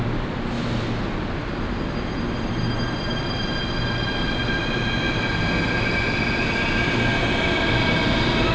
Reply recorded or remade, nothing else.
recorded